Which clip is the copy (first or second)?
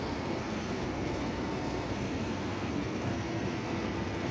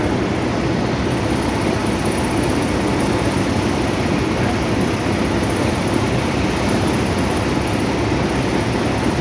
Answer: first